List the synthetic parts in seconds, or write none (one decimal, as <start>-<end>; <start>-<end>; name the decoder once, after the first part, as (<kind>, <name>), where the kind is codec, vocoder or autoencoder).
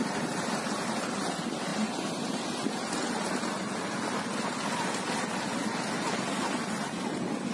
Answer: none